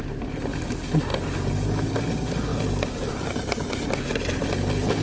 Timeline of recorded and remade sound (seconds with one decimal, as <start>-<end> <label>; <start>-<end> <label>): 0.0-5.0 recorded